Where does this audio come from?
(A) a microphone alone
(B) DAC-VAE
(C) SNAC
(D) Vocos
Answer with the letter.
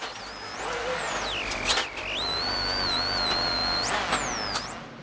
A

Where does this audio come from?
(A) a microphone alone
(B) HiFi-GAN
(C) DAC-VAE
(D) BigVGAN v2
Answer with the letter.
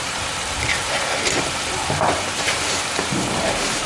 D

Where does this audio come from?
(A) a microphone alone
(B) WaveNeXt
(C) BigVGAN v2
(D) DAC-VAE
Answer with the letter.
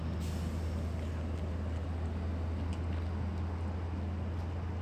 A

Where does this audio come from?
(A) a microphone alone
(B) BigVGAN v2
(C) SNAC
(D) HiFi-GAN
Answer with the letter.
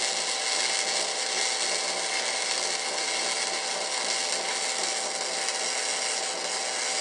A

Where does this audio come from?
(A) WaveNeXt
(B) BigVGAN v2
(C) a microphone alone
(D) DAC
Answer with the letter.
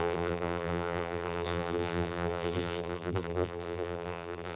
B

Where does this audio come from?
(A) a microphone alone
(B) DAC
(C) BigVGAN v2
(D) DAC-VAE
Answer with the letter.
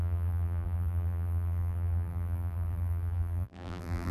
C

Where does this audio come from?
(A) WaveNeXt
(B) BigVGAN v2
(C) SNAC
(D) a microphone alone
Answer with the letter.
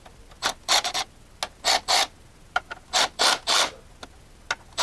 D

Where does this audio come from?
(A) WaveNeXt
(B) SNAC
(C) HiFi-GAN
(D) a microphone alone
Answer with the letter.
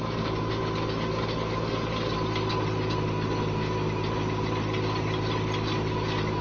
D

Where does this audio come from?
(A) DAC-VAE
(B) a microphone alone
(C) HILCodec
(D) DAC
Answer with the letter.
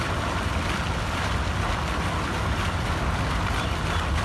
B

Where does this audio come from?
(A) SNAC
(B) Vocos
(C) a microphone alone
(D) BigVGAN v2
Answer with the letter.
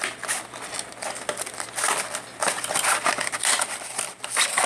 C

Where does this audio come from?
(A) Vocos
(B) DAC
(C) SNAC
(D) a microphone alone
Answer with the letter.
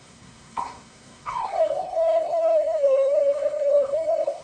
C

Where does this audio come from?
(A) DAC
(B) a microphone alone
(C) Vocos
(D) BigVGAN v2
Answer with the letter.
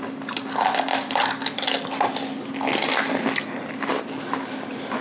B